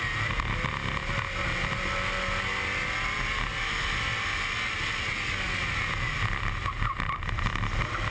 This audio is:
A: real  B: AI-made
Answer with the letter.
A